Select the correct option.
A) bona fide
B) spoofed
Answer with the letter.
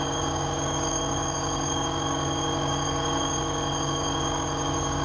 B